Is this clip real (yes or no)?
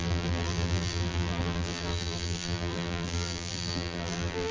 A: no